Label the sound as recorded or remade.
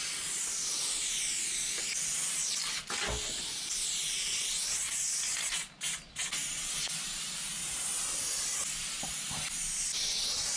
recorded